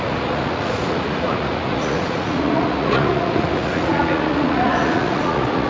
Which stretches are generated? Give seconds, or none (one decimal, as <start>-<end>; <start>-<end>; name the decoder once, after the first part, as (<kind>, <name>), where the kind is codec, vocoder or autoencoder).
0.0-5.7 (vocoder, Vocos)